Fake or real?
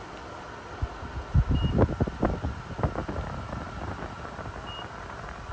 real